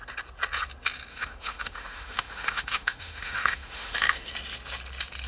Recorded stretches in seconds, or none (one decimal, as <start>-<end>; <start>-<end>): 0.0-1.1; 4.3-5.3